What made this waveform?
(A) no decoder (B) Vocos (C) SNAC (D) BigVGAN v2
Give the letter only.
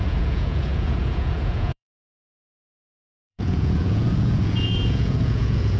B